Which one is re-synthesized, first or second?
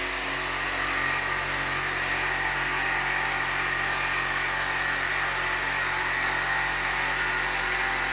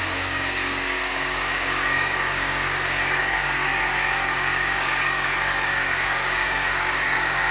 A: second